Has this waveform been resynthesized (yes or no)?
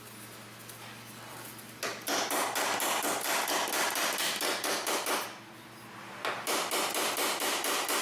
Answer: no